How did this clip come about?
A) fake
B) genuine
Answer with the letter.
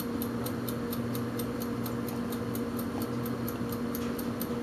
B